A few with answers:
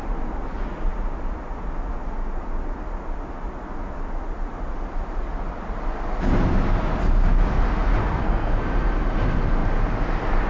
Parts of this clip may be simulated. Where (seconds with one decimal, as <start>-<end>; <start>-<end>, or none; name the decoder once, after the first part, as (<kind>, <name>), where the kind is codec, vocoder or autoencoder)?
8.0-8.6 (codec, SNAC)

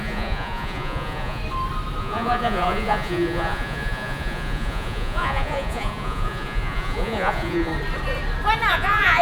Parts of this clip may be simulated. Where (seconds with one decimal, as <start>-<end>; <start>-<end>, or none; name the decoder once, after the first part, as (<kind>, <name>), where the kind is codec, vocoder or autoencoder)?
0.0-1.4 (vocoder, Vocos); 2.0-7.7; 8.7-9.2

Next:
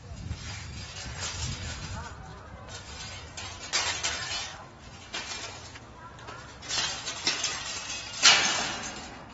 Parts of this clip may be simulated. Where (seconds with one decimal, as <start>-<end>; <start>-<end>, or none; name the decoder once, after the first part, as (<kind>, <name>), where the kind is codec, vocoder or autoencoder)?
2.3-2.8 (vocoder, Vocos)